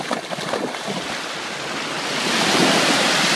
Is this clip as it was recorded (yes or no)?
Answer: yes